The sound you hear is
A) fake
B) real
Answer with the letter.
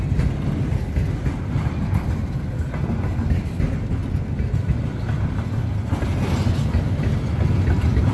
B